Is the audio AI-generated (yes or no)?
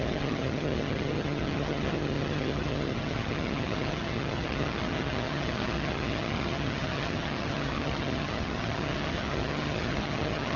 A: yes